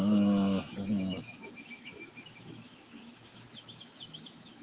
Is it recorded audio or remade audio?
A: remade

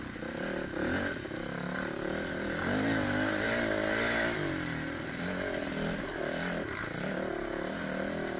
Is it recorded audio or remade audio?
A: recorded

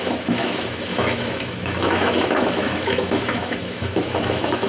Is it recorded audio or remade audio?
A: remade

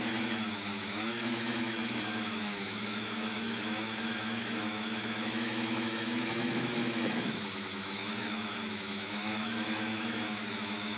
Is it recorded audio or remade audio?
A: remade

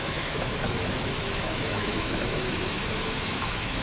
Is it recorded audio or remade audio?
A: remade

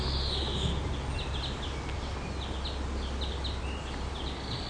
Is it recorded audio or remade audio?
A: recorded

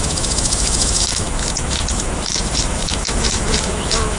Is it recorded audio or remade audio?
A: remade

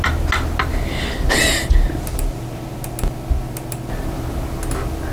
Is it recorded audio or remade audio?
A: recorded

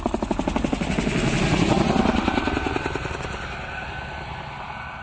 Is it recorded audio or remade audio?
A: recorded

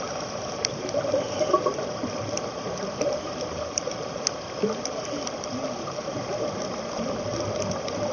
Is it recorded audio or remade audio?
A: recorded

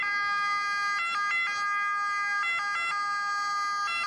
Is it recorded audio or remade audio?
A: recorded